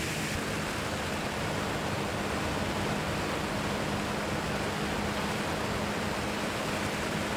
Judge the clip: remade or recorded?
recorded